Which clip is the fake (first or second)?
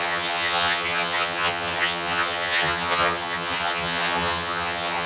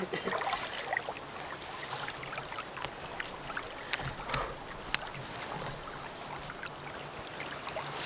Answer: first